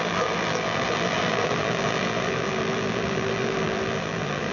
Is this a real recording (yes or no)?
no